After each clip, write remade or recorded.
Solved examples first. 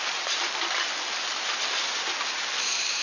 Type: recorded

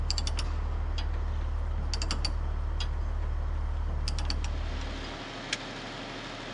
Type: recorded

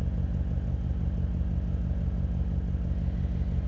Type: recorded